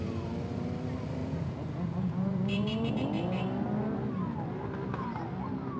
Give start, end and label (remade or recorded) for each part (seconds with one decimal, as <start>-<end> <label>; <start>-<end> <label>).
0.0-1.2 recorded; 1.2-2.9 remade; 2.9-5.8 recorded